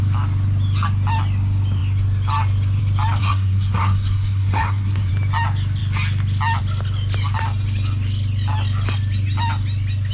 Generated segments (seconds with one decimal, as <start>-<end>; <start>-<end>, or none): 3.2-5.1